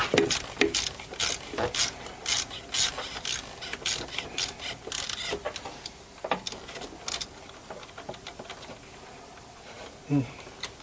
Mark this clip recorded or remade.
recorded